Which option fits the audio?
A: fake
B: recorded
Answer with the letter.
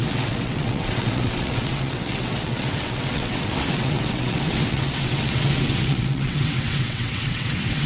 A